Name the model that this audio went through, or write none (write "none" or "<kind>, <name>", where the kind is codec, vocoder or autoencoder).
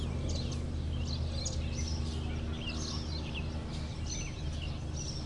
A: none